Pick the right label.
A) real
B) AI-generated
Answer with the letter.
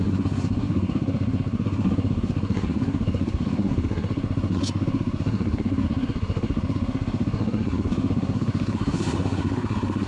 B